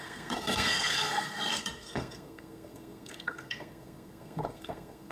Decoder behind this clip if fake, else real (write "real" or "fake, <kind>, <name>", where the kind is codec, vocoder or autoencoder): fake, codec, SNAC